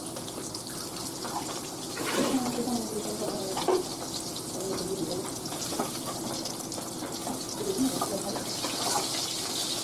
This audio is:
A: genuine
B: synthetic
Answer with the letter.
A